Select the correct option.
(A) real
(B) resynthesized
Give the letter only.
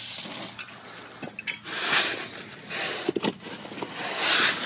A